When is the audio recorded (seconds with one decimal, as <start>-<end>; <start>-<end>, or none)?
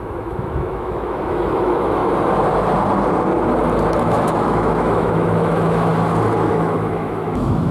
2.0-4.0; 5.9-6.5